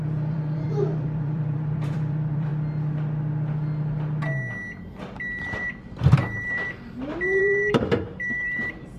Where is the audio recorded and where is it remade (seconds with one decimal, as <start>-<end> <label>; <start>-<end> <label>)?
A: 0.0-2.5 remade; 2.5-5.0 recorded; 5.0-9.0 remade